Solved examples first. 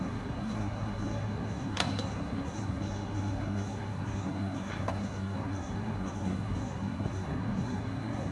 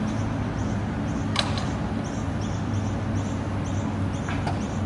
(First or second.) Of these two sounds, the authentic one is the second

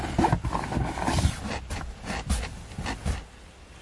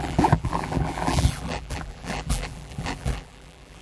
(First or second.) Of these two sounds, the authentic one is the first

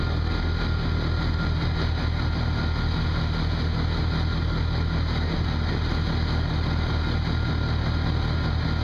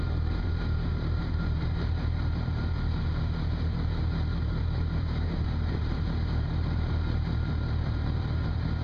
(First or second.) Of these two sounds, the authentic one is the first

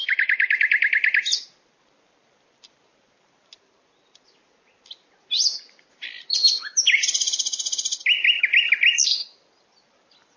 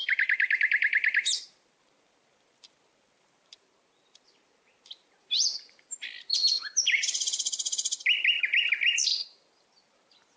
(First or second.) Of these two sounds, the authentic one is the first